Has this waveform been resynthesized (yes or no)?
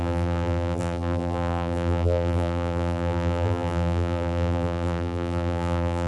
yes